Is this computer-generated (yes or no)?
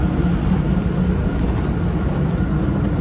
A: no